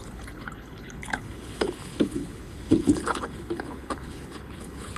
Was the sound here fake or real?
fake